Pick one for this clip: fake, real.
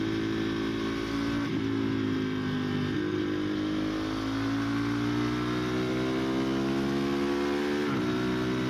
real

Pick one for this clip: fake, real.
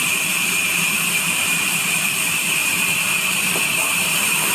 fake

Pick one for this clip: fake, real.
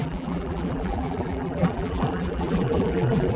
fake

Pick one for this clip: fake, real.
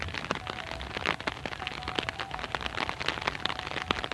real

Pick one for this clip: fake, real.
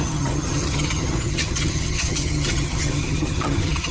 fake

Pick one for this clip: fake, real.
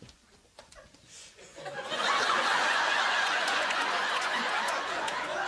fake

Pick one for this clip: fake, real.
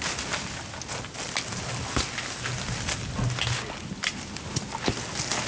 real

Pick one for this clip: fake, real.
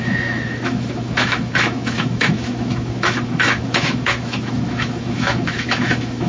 fake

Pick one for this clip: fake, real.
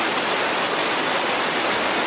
real